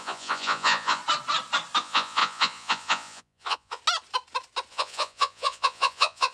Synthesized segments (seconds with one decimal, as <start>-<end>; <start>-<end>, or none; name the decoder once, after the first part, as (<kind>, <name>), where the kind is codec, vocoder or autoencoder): 0.0-1.0 (vocoder, Vocos); 1.8-3.8; 4.7-6.3